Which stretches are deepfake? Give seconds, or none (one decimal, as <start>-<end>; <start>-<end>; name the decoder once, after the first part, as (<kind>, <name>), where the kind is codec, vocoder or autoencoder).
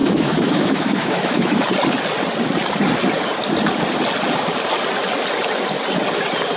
0.0-1.6 (autoencoder, DAC-VAE)